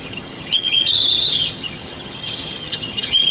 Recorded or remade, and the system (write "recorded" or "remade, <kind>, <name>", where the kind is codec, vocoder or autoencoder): remade, vocoder, HiFi-GAN